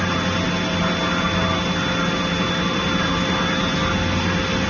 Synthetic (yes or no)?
no